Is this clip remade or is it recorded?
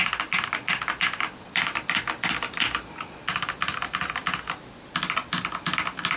recorded